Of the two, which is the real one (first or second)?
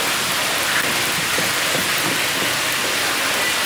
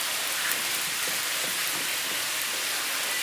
first